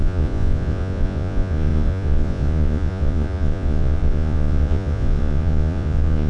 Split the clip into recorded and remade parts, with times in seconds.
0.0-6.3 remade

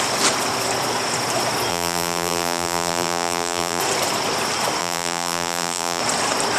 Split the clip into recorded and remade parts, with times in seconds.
0.0-1.7 recorded; 1.7-3.8 remade; 3.8-4.8 recorded; 4.8-6.0 remade; 6.0-6.6 recorded

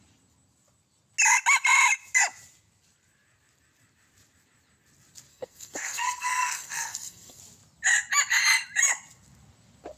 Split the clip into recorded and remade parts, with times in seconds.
0.0-5.3 recorded; 5.3-7.4 remade; 7.4-10.0 recorded